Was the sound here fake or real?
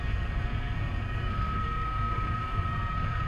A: fake